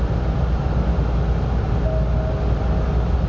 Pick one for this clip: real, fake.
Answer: real